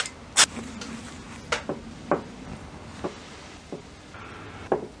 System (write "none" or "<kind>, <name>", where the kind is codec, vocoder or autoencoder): none